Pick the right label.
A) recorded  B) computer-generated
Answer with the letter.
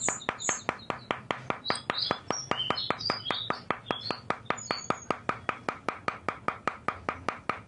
A